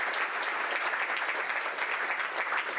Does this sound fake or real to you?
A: real